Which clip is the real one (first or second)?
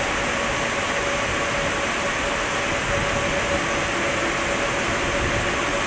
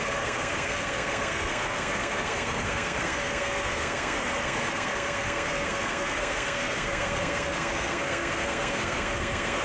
first